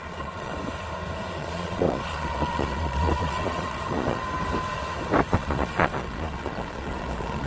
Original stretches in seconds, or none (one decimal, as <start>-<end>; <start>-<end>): 0.5-1.3; 4.2-5.3